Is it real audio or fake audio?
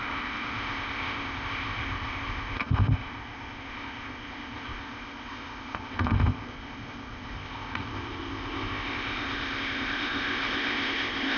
fake